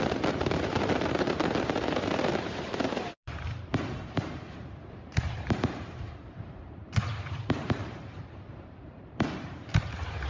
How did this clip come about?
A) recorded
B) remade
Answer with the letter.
B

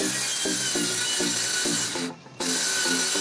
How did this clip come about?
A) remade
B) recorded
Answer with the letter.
A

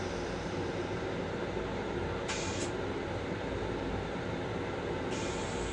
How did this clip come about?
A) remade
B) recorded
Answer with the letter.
A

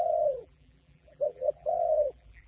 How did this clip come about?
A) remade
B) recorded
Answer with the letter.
A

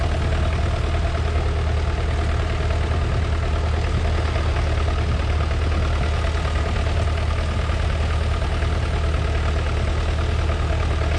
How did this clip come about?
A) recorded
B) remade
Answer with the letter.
A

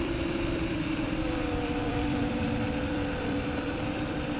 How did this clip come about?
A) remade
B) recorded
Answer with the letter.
A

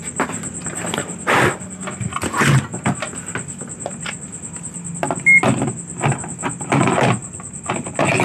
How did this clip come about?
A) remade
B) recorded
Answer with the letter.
B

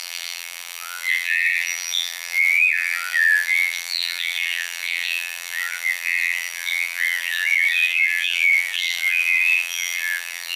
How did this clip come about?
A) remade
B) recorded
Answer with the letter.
A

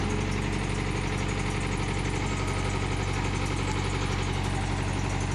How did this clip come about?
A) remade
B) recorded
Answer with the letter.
B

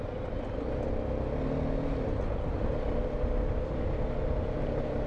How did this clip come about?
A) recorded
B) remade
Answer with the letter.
A